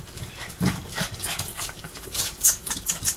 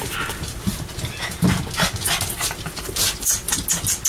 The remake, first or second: first